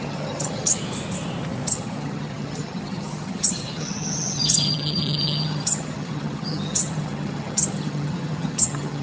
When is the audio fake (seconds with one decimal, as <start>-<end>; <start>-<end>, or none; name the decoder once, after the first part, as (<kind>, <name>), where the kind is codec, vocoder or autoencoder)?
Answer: 0.0-0.8 (vocoder, HiFi-GAN); 1.7-9.0